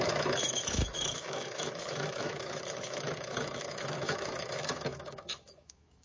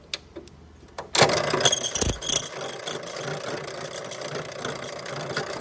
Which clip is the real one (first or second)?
second